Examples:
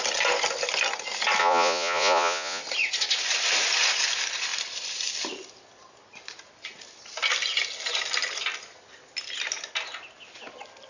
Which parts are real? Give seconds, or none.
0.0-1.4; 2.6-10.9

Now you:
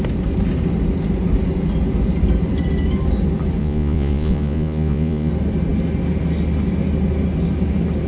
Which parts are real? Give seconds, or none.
0.0-3.6; 5.3-8.1

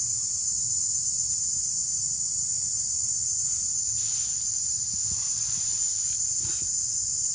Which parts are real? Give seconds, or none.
0.0-7.3

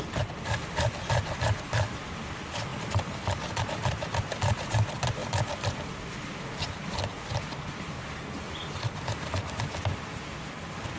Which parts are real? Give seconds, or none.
0.0-11.0

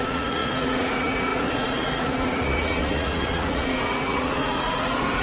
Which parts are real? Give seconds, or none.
none

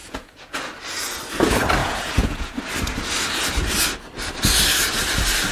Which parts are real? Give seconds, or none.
0.7-1.8; 2.6-5.5